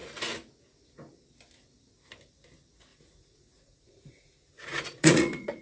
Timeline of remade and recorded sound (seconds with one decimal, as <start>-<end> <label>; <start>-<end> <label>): 0.0-2.9 recorded; 2.9-5.6 remade